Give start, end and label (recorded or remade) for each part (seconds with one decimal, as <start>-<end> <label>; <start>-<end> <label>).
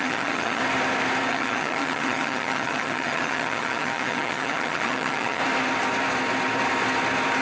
0.0-0.6 remade; 0.6-1.3 recorded; 1.3-5.4 remade; 5.4-7.4 recorded